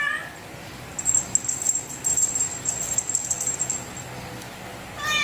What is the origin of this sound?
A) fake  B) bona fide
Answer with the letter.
B